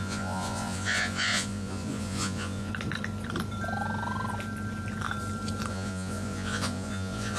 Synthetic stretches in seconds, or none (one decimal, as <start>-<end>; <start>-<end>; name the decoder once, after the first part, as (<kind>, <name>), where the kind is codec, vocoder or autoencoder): 0.0-2.7 (vocoder, Vocos); 5.7-7.4